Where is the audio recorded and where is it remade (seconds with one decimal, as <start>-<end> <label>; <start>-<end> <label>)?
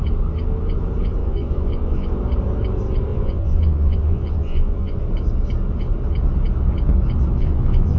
0.0-1.2 recorded; 1.2-2.1 remade; 2.1-3.1 recorded; 3.1-5.0 remade; 5.0-7.4 recorded; 7.4-8.0 remade